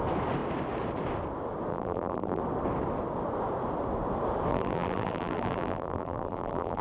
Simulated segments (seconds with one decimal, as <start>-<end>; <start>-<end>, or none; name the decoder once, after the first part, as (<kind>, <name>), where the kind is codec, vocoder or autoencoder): 1.7-2.4 (vocoder, BigVGAN v2); 4.5-6.8